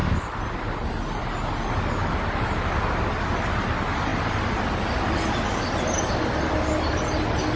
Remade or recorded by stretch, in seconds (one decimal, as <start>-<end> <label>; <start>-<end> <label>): 0.0-7.6 recorded